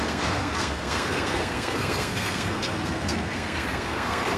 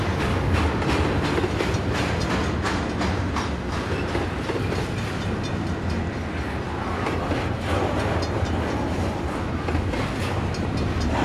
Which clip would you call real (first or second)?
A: second